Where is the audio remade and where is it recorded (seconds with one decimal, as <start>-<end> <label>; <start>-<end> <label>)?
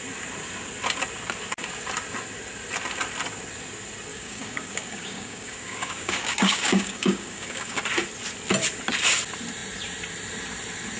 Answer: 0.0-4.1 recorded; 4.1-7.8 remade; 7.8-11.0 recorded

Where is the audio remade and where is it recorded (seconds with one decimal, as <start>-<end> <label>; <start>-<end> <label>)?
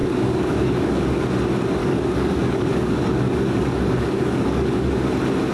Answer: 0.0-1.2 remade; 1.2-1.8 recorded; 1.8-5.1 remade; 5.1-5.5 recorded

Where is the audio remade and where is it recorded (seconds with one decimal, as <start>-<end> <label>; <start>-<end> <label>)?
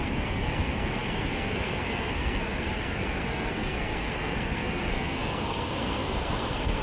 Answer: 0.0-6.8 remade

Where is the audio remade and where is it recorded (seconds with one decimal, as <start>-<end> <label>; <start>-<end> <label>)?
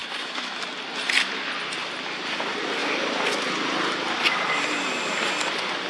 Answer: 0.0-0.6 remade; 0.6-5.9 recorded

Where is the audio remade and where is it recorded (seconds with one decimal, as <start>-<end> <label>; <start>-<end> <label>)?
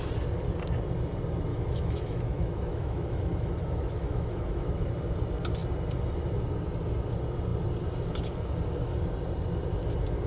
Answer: 0.0-1.5 recorded; 1.5-4.9 remade; 4.9-10.3 recorded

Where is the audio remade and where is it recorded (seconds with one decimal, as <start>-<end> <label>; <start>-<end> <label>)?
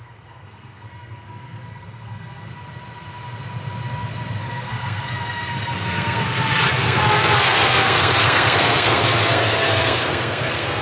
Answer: 0.0-2.5 remade; 2.5-4.4 recorded; 4.4-10.8 remade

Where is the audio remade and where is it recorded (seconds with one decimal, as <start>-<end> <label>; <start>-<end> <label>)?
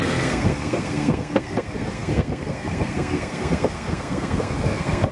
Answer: 0.0-5.1 remade